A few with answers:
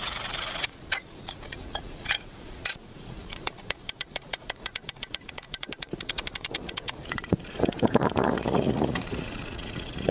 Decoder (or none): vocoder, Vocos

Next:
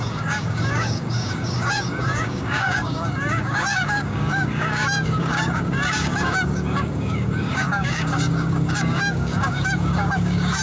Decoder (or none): codec, DAC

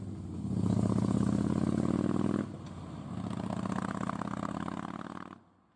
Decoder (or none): none